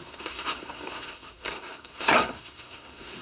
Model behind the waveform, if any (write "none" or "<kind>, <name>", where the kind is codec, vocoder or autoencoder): codec, SNAC